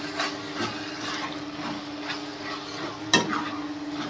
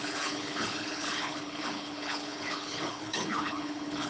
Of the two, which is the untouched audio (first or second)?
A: first